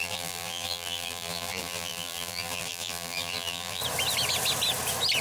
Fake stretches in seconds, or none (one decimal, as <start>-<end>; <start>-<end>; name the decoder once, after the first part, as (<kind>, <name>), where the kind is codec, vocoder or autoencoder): 0.0-3.8 (vocoder, BigVGAN v2)